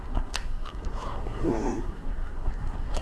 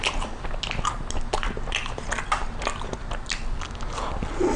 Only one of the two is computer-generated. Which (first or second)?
first